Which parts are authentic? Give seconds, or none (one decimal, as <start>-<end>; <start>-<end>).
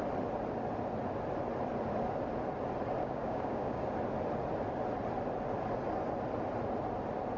0.0-3.0; 3.8-7.4